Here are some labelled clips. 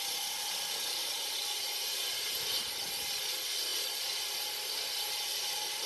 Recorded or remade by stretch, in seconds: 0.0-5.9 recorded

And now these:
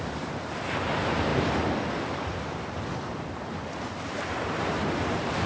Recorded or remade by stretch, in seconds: 0.0-1.3 remade; 1.3-4.6 recorded; 4.6-5.5 remade

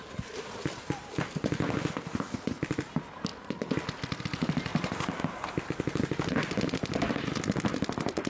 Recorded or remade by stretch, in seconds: 0.0-4.7 recorded; 4.7-5.8 remade; 5.8-8.3 recorded